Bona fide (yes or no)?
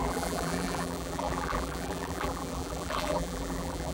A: no